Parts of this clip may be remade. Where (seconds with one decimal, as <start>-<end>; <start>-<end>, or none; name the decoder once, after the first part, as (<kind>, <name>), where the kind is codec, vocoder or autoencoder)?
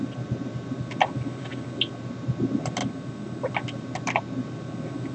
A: none